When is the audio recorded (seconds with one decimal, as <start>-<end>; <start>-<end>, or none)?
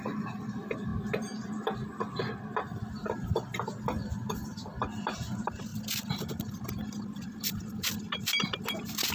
0.0-9.1